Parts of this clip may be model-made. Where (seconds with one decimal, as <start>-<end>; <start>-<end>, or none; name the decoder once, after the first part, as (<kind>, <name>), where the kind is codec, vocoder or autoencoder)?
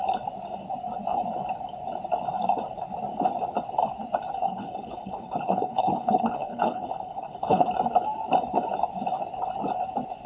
4.4-7.7 (codec, HILCodec)